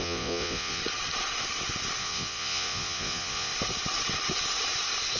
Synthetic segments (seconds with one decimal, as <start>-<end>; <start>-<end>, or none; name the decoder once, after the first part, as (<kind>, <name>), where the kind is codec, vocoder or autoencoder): 0.0-0.8 (vocoder, Vocos); 2.0-3.5